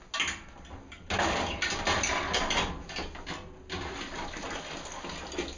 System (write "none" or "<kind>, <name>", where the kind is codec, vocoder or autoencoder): none